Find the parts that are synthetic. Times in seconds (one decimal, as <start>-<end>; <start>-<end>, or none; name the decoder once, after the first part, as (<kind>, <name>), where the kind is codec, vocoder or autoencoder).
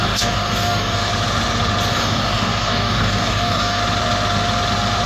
0.0-1.1 (codec, DAC); 1.9-3.8